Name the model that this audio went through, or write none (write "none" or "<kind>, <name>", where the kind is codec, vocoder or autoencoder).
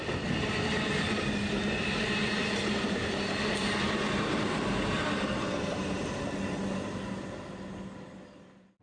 none